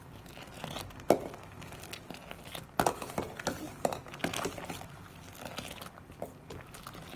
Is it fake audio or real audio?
real